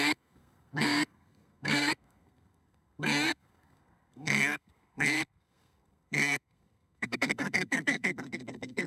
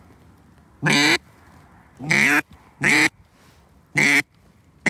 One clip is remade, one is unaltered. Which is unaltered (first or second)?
second